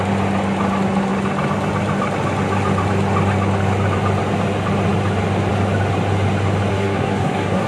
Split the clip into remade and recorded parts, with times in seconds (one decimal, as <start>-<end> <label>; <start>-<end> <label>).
0.0-6.7 recorded; 6.7-7.7 remade